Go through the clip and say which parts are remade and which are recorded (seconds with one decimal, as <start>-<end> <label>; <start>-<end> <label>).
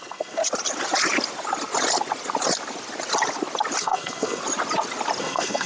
0.0-0.4 remade; 0.4-3.8 recorded; 3.8-4.4 remade; 4.4-5.2 recorded; 5.2-5.7 remade